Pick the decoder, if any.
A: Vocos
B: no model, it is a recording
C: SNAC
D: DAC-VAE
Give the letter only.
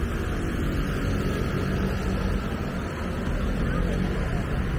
B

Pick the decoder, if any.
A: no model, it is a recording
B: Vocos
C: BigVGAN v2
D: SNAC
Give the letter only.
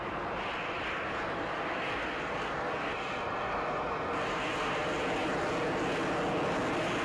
A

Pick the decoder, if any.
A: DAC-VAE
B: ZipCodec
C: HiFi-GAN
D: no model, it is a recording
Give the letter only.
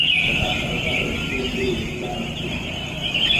D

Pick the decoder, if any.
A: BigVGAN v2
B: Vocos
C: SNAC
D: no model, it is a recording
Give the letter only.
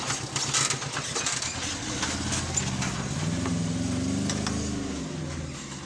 D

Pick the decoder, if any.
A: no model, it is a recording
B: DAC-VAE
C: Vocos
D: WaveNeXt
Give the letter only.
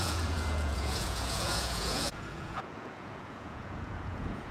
C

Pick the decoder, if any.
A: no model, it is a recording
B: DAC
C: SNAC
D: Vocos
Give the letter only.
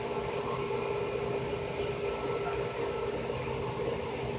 A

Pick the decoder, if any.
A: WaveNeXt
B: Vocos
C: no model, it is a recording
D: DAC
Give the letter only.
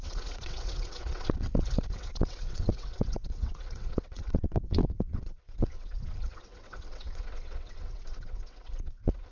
A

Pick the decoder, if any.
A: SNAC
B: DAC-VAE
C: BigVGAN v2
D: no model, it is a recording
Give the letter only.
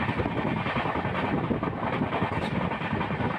D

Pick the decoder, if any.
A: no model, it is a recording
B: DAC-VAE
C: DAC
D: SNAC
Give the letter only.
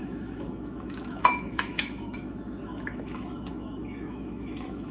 B